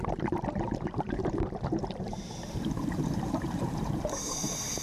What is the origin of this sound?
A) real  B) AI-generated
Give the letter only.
B